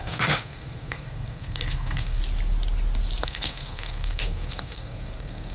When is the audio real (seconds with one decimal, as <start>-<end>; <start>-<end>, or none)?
2.2-3.2